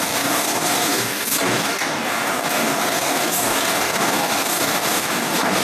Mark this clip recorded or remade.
remade